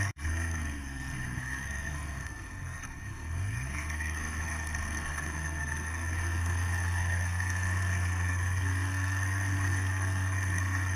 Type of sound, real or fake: fake